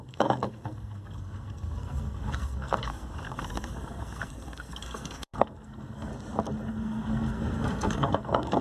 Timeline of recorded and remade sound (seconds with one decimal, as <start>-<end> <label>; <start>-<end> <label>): 0.0-6.1 remade; 6.1-6.7 recorded; 6.7-8.6 remade